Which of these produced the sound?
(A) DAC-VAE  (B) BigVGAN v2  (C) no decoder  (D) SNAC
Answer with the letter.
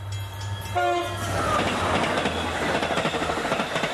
C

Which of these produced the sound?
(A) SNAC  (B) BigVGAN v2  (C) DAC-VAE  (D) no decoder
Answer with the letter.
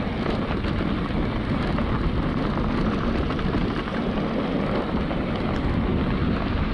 D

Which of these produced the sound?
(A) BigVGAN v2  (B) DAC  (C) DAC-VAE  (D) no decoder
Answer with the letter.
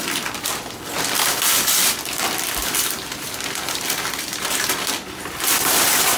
A